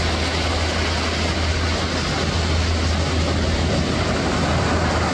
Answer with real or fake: real